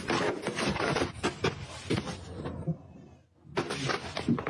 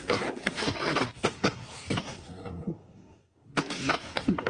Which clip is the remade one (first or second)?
second